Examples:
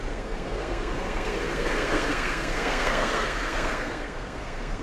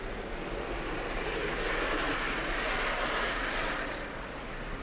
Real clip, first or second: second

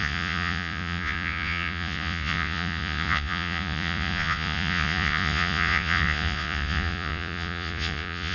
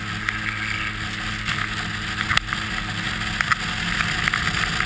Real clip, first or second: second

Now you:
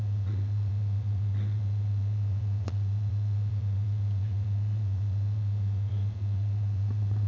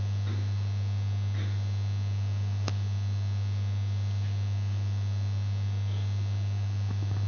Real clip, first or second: second